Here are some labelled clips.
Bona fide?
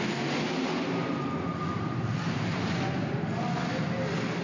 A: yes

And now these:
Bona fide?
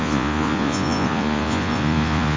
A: no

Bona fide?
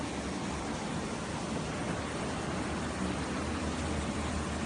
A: yes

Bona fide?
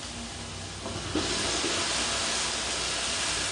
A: yes